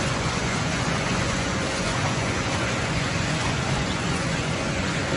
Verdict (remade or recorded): remade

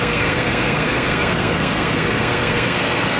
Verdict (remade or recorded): remade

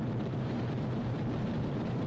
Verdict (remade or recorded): remade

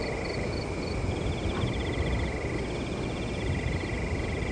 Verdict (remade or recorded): recorded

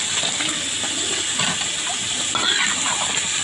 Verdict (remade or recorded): recorded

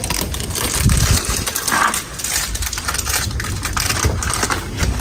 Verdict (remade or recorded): recorded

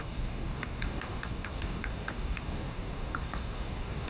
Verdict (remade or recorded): remade